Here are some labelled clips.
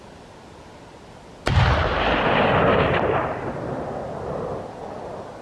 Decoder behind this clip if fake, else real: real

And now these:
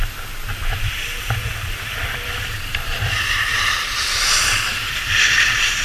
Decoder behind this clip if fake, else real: fake, vocoder, BigVGAN v2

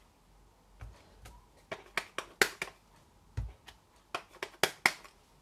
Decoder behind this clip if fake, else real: real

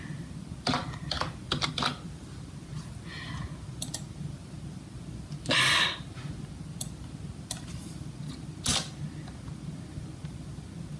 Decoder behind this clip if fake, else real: real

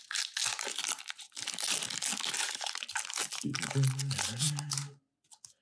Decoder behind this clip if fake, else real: real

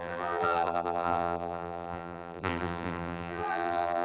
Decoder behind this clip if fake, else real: fake, vocoder, BigVGAN v2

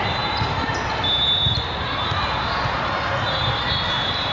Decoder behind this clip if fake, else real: real